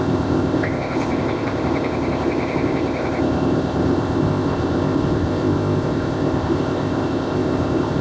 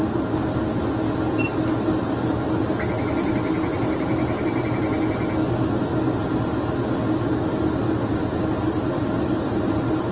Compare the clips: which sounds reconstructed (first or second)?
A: first